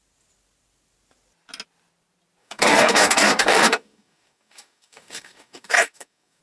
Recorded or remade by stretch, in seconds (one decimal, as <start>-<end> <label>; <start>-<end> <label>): 0.0-2.4 recorded; 2.4-6.4 remade